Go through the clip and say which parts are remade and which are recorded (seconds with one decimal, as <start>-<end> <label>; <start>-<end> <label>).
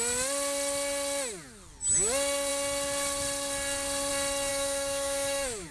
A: 0.0-4.5 recorded; 4.5-5.7 remade